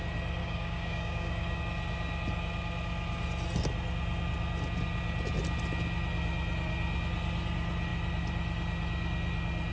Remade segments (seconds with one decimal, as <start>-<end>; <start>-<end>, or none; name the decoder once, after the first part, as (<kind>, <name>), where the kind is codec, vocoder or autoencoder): 0.4-1.6 (codec, DAC)

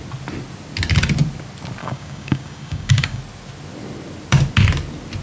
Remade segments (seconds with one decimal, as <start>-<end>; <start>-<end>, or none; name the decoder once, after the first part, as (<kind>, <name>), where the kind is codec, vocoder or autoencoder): 1.8-3.2 (codec, DAC)

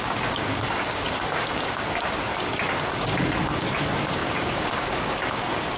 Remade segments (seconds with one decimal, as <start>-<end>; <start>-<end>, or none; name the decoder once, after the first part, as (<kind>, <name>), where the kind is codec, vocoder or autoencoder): 0.0-2.3 (codec, DAC); 2.9-5.8